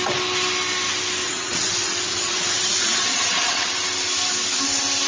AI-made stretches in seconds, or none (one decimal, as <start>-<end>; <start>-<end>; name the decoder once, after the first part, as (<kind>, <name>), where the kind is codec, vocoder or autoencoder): 1.2-3.7 (vocoder, WaveNeXt)